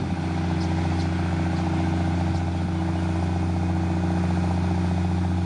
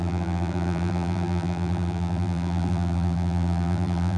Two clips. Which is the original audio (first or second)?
first